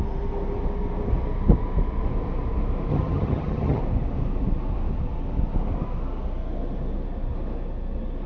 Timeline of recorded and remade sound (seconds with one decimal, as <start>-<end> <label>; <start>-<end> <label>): 0.0-2.9 recorded; 2.9-3.8 remade; 3.8-8.3 recorded